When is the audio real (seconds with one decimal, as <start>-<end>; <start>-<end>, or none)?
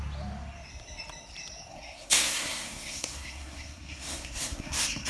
0.0-1.7